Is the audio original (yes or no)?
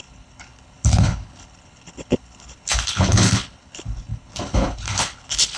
no